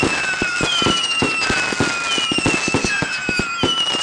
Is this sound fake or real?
real